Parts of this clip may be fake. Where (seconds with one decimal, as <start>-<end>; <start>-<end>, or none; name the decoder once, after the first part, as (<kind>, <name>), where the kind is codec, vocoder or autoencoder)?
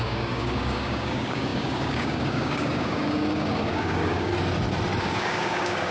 0.0-4.3 (codec, DAC); 5.0-5.9